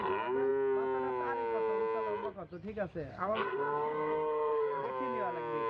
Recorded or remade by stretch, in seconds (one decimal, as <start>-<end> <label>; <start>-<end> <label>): 0.0-3.1 recorded; 3.1-4.9 remade; 4.9-5.7 recorded